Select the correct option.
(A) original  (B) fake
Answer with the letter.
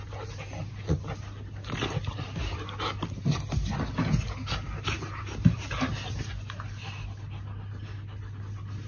A